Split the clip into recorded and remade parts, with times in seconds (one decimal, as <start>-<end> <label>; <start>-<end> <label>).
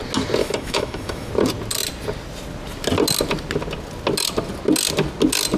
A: 0.0-0.4 recorded; 0.4-1.3 remade; 1.3-5.6 recorded